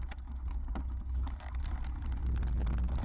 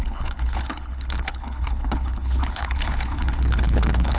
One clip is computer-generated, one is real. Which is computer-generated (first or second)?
second